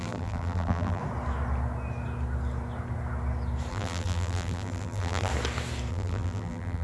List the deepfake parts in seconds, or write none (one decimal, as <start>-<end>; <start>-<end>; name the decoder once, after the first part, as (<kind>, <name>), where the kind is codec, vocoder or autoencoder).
0.0-1.0 (vocoder, BigVGAN v2); 3.7-5.3; 5.9-6.8